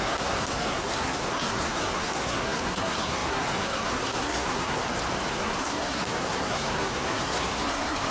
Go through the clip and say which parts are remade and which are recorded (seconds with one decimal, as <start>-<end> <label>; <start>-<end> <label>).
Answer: 0.0-4.8 remade; 4.8-5.3 recorded; 5.3-8.1 remade